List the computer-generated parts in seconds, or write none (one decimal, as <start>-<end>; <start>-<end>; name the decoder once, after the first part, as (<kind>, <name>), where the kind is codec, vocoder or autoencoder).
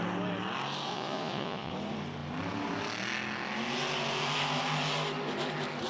0.9-1.7 (vocoder, Vocos)